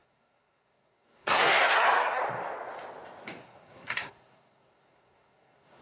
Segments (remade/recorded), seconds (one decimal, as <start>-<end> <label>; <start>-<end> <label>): 0.0-2.2 remade; 2.2-3.4 recorded; 3.4-5.8 remade